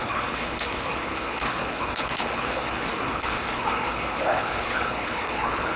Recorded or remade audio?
remade